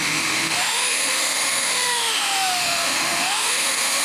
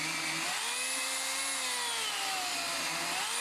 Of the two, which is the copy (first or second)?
first